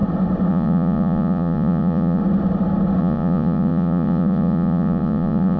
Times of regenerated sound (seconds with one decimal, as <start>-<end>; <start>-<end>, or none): 0.5-2.2; 3.0-5.6